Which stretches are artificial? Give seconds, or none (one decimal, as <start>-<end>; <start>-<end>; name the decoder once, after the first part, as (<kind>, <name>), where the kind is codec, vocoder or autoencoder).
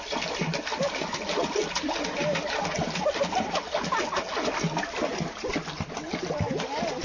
none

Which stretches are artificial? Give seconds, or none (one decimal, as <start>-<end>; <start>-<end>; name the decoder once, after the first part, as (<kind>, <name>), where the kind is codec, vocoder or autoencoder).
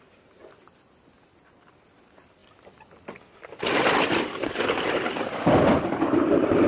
none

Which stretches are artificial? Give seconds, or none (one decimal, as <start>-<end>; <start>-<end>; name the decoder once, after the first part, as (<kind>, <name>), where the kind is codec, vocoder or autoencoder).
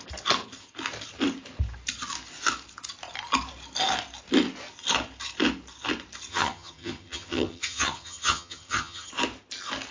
6.3-9.1 (vocoder, HiFi-GAN)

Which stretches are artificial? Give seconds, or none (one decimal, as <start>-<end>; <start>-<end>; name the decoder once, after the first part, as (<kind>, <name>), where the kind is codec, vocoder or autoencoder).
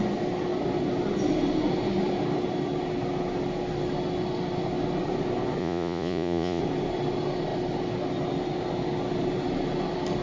5.6-6.6 (vocoder, Vocos)